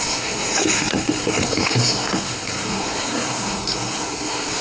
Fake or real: fake